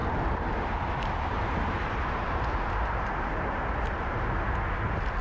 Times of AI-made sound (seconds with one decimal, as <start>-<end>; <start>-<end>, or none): 0.0-2.7